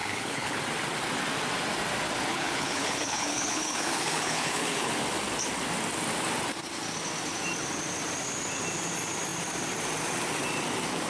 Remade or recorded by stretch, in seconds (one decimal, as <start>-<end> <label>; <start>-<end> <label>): 0.0-0.6 remade; 0.6-2.3 recorded; 2.3-4.9 remade; 4.9-11.1 recorded